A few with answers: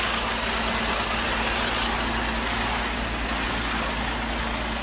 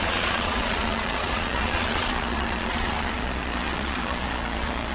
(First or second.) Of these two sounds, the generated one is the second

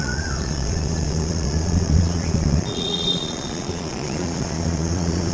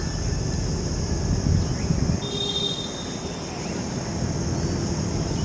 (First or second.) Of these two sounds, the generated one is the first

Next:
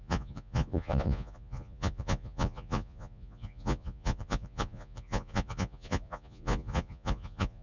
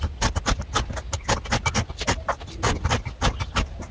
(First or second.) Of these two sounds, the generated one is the first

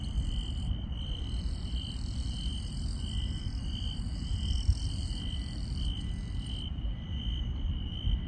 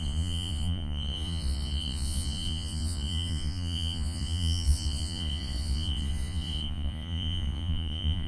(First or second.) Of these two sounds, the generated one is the second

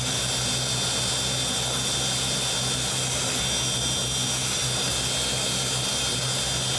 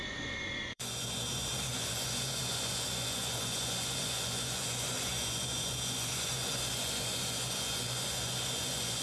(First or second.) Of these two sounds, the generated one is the second